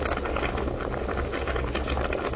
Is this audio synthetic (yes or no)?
no